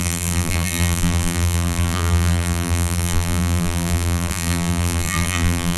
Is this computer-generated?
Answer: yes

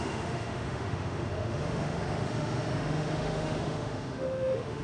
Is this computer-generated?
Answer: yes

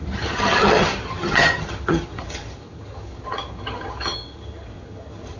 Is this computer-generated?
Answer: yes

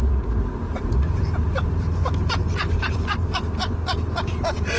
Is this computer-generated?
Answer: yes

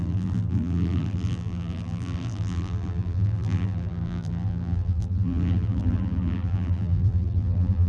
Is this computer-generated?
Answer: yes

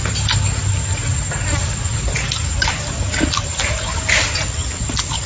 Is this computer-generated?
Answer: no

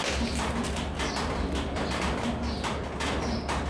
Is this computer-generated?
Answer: no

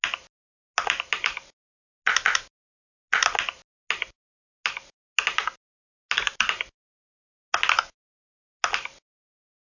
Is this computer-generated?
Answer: no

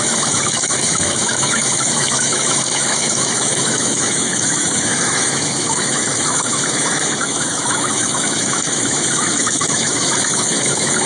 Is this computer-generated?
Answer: yes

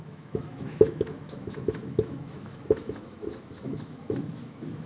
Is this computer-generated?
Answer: yes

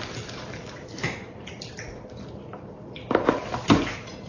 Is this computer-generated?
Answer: no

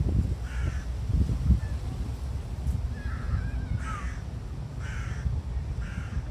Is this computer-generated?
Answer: no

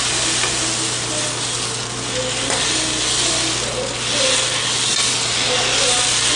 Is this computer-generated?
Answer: no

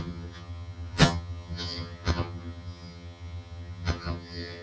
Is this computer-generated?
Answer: yes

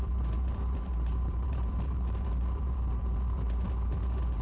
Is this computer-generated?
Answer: yes